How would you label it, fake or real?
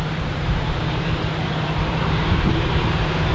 fake